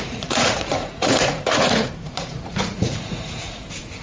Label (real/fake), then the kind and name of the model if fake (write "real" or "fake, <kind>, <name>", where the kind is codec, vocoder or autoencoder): fake, vocoder, Vocos